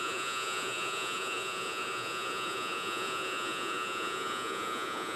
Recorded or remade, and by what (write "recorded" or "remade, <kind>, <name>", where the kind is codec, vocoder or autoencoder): remade, vocoder, Vocos